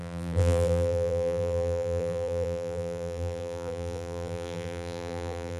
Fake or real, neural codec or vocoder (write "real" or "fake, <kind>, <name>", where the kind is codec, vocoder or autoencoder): fake, vocoder, BigVGAN v2